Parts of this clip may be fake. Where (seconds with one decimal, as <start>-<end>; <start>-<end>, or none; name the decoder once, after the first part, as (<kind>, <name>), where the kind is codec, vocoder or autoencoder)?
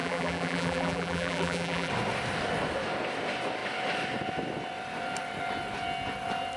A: 0.0-1.9 (vocoder, BigVGAN v2)